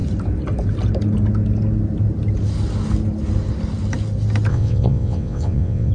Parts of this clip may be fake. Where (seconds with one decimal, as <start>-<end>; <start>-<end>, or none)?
4.5-5.9